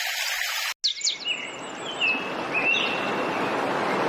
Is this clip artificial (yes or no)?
no